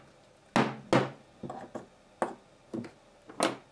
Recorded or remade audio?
recorded